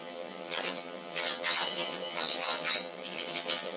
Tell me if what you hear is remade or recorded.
remade